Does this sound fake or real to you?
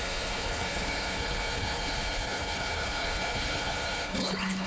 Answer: fake